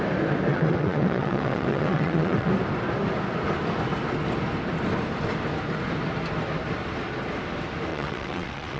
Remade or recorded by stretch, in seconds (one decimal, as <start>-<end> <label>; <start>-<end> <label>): 0.0-0.5 recorded; 0.5-2.5 remade; 2.5-7.9 recorded; 7.9-8.8 remade

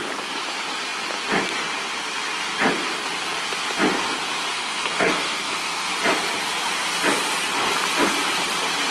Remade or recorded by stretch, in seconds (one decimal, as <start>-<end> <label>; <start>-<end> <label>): 0.0-4.5 recorded; 4.5-5.9 remade; 5.9-8.9 recorded

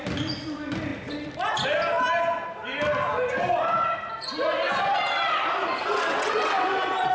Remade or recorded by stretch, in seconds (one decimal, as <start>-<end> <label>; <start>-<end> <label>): 0.0-5.8 recorded; 5.8-7.1 remade

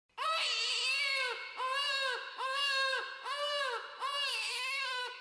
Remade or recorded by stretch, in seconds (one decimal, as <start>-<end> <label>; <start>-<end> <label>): 0.0-2.3 recorded; 2.3-2.9 remade; 2.9-4.3 recorded; 4.3-5.2 remade

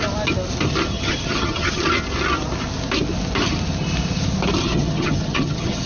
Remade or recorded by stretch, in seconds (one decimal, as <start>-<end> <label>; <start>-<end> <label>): 0.0-0.9 recorded; 0.9-1.8 remade; 1.8-4.6 recorded; 4.6-5.9 remade